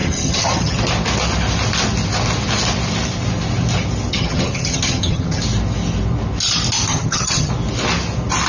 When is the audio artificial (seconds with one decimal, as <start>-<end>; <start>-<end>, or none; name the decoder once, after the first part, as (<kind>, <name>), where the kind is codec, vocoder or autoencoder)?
0.0-0.8 (vocoder, HiFi-GAN); 4.1-5.4; 6.9-7.5